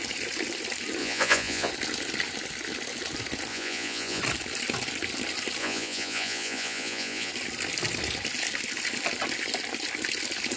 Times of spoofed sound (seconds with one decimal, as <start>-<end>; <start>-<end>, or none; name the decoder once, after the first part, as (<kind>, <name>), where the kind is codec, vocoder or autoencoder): 1.0-1.7 (vocoder, Vocos); 3.5-4.2; 5.6-7.3